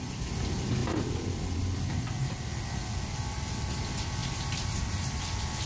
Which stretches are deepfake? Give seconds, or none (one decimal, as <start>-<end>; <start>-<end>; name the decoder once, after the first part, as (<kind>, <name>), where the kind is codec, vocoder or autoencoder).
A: 4.2-5.2 (vocoder, BigVGAN v2)